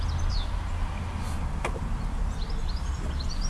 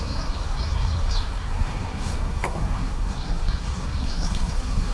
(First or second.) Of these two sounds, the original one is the first